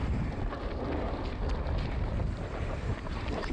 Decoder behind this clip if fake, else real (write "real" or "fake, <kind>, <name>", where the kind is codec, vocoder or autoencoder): fake, vocoder, BigVGAN v2